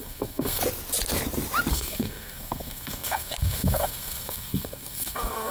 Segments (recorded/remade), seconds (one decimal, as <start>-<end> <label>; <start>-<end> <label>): 0.0-0.6 remade; 0.6-1.7 recorded; 1.7-5.5 remade